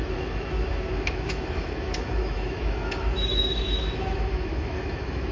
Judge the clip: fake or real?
fake